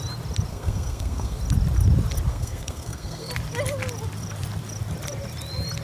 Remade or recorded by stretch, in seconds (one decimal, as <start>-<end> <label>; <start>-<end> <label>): 0.0-0.5 recorded; 0.5-1.4 remade; 1.4-2.3 recorded; 2.3-3.3 remade; 3.3-5.8 recorded